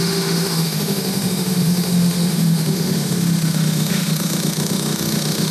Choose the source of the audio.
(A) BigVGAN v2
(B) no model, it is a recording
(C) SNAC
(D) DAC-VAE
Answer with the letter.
D